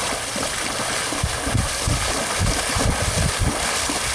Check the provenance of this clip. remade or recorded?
recorded